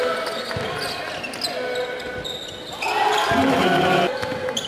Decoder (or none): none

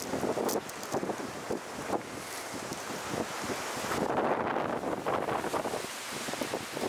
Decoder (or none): none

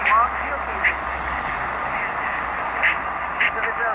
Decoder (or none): none